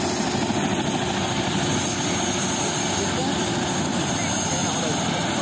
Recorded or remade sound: recorded